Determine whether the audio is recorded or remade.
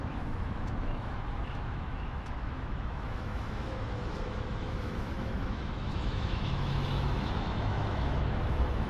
remade